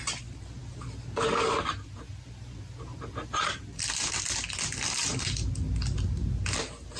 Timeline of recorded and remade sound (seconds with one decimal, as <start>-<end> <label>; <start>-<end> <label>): 0.0-7.0 recorded